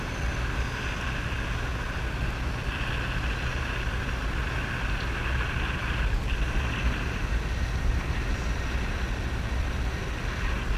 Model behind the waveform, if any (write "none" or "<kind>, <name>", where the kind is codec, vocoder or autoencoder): none